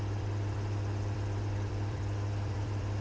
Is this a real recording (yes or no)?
no